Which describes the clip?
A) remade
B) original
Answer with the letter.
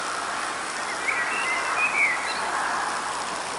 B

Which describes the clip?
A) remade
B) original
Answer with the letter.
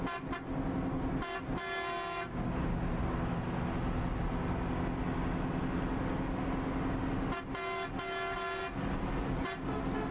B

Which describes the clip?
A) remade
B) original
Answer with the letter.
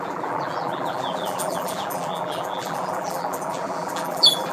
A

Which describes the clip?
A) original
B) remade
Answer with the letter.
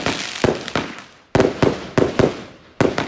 A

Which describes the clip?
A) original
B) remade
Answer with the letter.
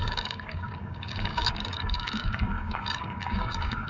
B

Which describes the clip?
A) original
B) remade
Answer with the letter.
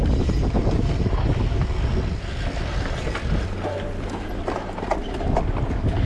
A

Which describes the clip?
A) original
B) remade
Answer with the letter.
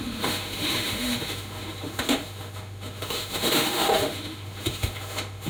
B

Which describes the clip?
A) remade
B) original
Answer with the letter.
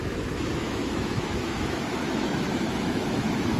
A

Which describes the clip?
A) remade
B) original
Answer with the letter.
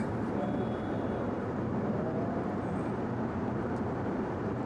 A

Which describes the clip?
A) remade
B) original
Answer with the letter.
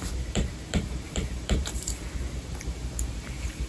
A